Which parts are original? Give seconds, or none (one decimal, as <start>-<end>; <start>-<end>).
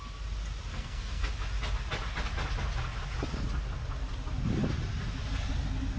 0.0-0.7; 1.3-6.0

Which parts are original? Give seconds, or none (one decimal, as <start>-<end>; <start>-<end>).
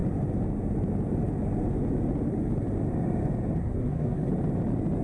0.0-3.6; 4.3-5.0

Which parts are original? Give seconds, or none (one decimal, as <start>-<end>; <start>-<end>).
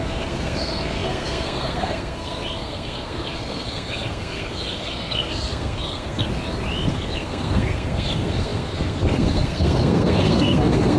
6.3-6.9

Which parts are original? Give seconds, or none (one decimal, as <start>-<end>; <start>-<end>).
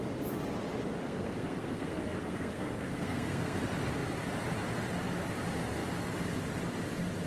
0.0-1.0; 3.6-7.3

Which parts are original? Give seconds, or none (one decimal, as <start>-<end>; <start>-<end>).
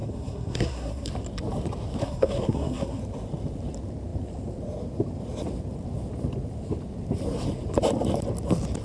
1.1-2.0; 3.0-8.8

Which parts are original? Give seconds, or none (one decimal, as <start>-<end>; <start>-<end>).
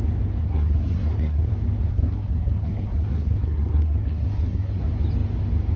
0.0-0.4; 1.5-1.9; 4.8-5.8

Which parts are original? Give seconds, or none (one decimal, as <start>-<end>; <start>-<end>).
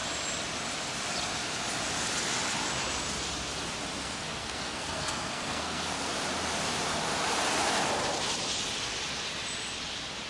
0.0-4.0; 6.1-10.3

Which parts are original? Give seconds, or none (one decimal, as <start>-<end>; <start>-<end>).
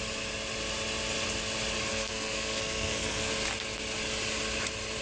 0.0-1.9; 3.3-5.0